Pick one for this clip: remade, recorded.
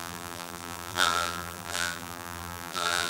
remade